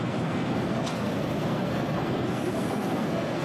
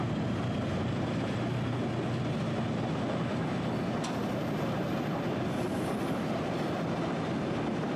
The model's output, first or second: first